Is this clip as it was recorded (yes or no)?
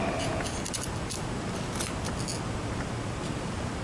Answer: yes